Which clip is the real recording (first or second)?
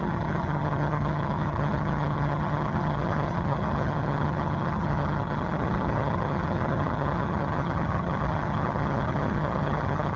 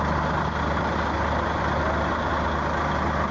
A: second